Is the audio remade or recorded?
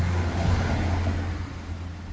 recorded